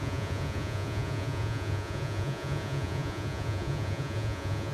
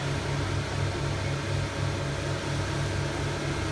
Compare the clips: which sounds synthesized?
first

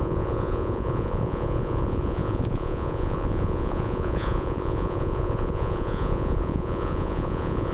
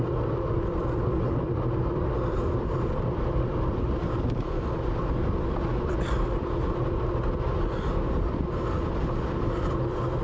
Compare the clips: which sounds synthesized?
first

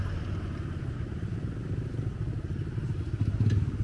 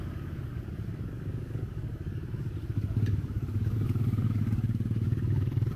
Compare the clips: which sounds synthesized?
second